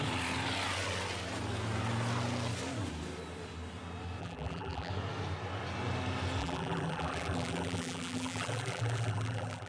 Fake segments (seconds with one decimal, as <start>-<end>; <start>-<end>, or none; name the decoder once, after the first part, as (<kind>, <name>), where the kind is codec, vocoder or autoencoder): 4.2-4.9 (vocoder, BigVGAN v2); 6.4-9.7